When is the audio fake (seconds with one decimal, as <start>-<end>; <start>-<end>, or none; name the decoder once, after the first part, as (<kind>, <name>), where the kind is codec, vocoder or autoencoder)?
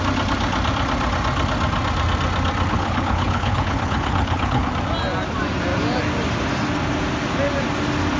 2.7-4.7 (codec, HILCodec)